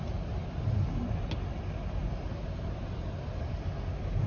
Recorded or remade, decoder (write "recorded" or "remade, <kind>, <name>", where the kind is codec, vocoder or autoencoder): recorded